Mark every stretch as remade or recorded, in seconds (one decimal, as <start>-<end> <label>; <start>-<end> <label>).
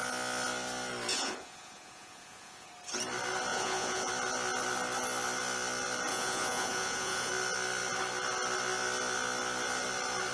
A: 0.0-1.1 recorded; 1.1-2.7 remade; 2.7-3.5 recorded; 3.5-4.1 remade; 4.1-6.1 recorded; 6.1-7.3 remade; 7.3-10.3 recorded